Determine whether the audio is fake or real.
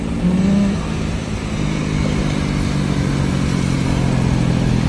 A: real